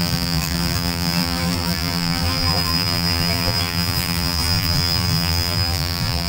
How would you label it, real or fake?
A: fake